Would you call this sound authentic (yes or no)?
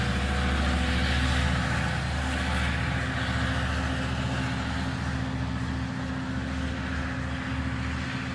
yes